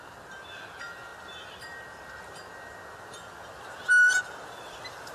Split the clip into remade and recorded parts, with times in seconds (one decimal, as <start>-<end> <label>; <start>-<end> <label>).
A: 0.0-5.1 recorded